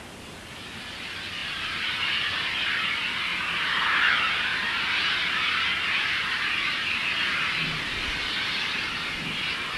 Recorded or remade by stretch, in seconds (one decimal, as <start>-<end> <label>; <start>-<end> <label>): 0.0-1.4 recorded; 1.4-2.1 remade; 2.1-3.3 recorded; 3.3-4.1 remade; 4.1-4.5 recorded; 4.5-8.9 remade; 8.9-9.8 recorded